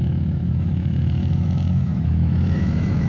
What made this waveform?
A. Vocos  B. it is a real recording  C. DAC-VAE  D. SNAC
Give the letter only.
C